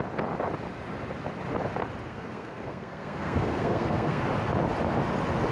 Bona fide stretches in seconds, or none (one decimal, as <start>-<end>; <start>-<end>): 0.0-2.1; 4.2-5.5